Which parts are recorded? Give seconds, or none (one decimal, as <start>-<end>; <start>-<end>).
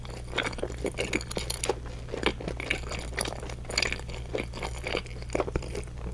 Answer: 0.0-6.1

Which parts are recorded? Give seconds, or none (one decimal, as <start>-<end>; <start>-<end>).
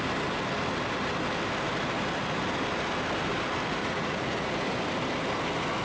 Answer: 0.0-3.8; 4.5-5.8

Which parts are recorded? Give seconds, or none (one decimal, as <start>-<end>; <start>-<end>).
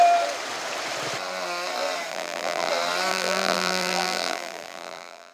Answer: 0.0-2.1; 2.7-3.1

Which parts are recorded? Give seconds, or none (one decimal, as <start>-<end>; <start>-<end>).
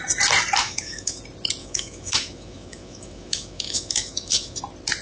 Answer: 0.0-0.6; 1.2-1.6; 4.6-5.0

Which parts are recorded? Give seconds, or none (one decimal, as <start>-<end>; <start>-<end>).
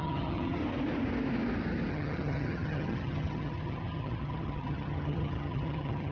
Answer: 0.6-1.9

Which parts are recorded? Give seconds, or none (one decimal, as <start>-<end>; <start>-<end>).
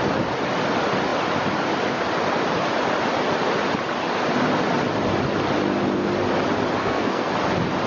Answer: 0.0-6.8; 7.3-7.9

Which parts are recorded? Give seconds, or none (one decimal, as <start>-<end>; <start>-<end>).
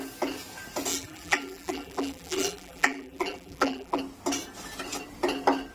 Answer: 0.0-0.9; 4.0-5.7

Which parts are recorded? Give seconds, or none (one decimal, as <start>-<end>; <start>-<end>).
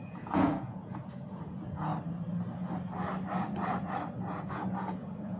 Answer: 1.9-4.5